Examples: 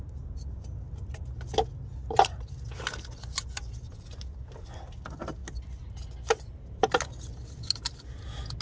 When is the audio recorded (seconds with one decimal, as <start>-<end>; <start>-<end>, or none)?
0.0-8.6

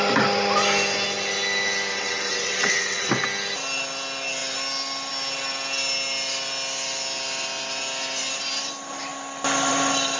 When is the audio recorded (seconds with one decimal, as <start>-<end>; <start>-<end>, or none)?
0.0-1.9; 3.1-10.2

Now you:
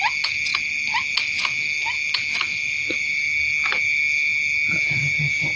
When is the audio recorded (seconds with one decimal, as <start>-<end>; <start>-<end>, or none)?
0.0-5.6

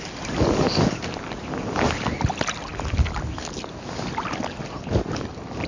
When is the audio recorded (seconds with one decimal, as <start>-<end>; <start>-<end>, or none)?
0.0-5.7

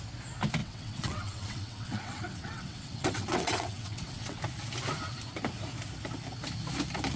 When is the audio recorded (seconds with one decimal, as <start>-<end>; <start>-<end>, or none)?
0.0-0.6; 4.4-7.2

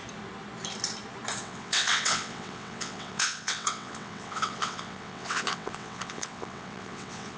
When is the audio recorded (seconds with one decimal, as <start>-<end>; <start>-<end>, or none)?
0.0-1.4

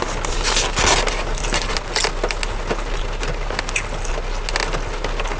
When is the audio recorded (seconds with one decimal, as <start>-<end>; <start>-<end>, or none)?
0.0-5.4

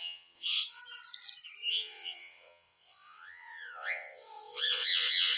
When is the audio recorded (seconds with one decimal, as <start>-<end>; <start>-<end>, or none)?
0.8-1.7